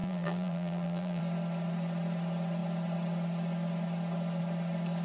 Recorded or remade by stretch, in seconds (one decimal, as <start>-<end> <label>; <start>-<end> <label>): 0.0-1.2 remade; 1.2-5.0 recorded